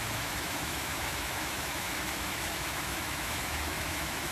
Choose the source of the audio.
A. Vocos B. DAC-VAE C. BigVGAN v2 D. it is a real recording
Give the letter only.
B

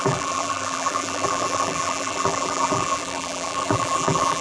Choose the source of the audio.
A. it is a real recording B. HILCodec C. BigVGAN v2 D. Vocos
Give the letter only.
C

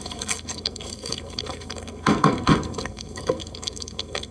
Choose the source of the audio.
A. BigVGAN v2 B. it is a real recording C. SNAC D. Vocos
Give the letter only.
C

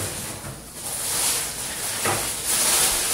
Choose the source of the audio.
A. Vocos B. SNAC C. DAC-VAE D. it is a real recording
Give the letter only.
D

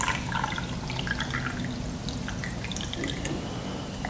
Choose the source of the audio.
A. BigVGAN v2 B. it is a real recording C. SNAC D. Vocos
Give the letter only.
B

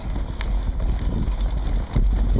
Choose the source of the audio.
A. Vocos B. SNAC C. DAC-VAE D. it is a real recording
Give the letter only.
D